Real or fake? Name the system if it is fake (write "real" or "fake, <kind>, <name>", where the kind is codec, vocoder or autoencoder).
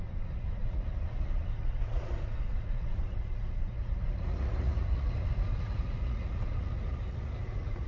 fake, vocoder, Vocos